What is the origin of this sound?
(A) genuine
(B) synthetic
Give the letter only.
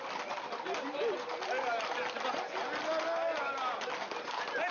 A